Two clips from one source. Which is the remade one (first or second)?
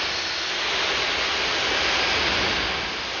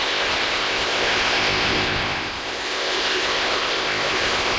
second